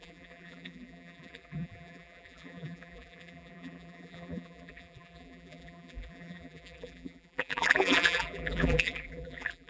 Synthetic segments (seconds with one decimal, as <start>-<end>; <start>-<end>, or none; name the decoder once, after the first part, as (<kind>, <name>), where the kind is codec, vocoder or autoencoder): 0.0-9.7 (vocoder, BigVGAN v2)